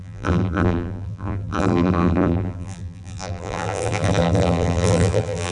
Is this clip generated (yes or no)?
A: yes